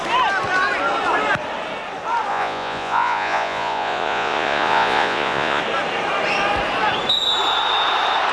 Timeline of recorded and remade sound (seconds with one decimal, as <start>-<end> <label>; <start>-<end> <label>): 0.0-2.3 recorded; 2.3-5.6 remade; 5.6-8.3 recorded